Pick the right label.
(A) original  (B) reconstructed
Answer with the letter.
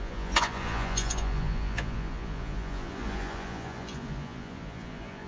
B